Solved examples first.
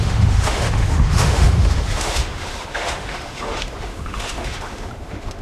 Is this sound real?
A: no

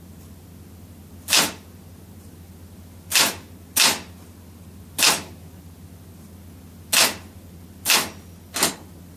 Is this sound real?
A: yes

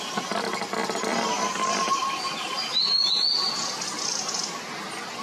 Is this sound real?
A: yes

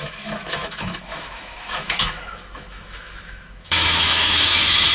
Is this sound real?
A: no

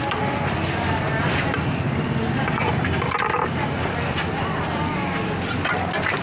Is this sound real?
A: yes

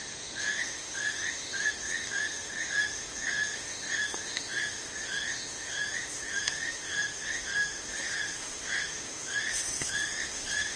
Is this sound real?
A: no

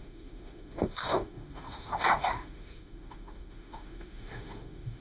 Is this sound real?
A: no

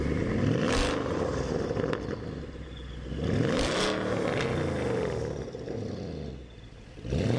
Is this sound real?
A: yes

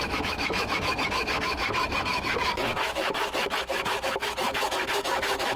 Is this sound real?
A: no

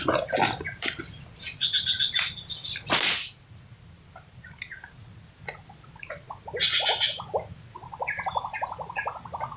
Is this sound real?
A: yes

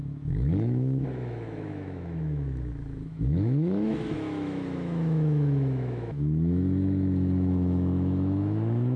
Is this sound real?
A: no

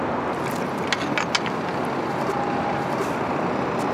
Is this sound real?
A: yes